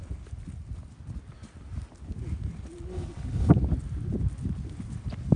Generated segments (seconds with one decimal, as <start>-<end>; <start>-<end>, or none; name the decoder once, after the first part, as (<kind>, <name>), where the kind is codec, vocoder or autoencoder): 2.9-3.5 (codec, HILCodec)